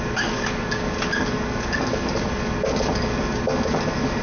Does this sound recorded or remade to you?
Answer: remade